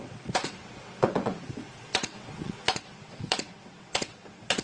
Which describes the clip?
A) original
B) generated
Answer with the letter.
B